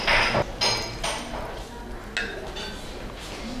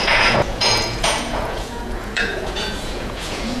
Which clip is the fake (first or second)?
second